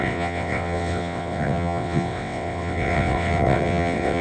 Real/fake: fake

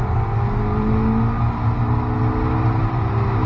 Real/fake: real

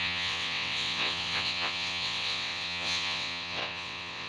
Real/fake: fake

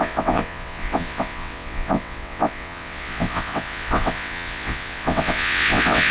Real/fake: fake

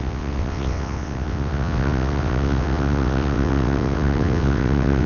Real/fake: fake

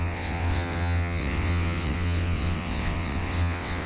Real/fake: fake